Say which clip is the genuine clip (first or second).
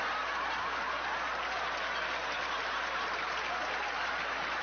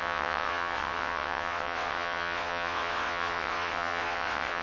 first